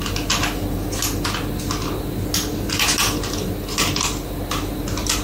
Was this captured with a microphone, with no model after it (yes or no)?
yes